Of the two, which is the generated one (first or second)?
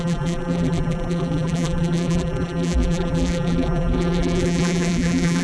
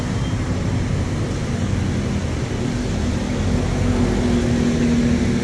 first